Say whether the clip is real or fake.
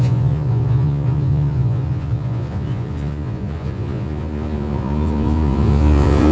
fake